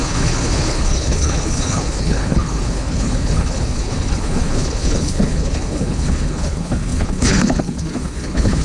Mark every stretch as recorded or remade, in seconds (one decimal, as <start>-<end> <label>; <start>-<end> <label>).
0.0-8.6 remade